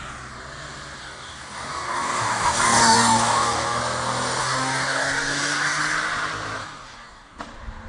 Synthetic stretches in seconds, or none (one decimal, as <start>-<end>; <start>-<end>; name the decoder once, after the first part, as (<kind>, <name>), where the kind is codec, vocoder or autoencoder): 1.0-3.8 (codec, DAC); 4.4-5.8; 6.6-7.4